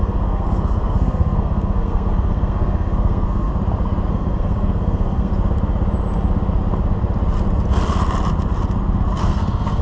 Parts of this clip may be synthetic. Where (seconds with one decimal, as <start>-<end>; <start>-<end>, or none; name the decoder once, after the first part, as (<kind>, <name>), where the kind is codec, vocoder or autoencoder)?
0.0-3.5 (codec, SNAC); 4.1-5.3; 9.2-9.8